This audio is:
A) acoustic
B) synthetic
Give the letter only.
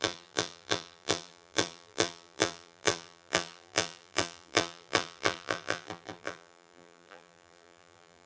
B